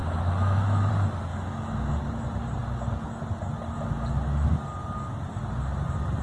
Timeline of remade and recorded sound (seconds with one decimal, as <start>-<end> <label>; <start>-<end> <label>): 0.0-0.9 remade; 0.9-1.3 recorded; 1.3-1.9 remade; 1.9-6.2 recorded